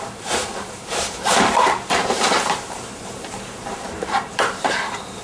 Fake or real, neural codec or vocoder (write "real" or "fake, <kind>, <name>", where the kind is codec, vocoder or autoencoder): fake, vocoder, BigVGAN v2